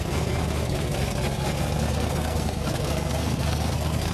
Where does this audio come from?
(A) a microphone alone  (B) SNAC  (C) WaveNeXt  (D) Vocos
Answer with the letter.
B